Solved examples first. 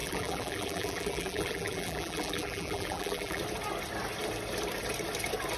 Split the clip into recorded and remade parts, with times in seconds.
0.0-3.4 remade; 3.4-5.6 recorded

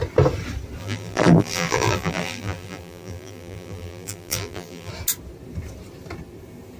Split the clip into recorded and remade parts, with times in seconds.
0.0-0.8 recorded; 0.8-4.9 remade; 4.9-6.8 recorded